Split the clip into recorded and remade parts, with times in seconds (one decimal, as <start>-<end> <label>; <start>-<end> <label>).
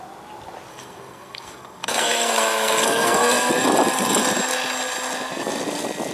0.0-0.7 recorded; 0.7-3.5 remade; 3.5-6.1 recorded